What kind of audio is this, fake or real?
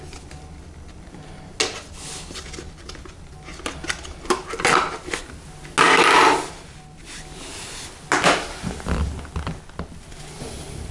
real